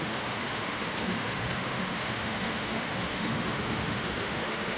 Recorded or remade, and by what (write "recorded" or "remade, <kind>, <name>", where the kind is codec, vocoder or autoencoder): remade, autoencoder, DAC-VAE